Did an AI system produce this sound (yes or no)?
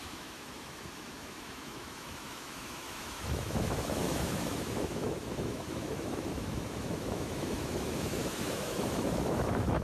yes